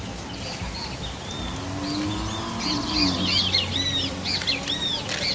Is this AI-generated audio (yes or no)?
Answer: no